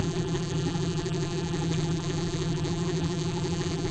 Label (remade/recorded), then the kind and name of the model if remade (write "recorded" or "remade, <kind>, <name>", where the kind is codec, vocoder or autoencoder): remade, vocoder, BigVGAN v2